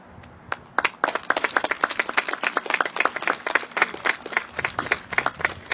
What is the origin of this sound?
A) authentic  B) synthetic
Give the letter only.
A